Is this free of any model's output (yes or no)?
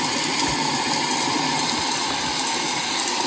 yes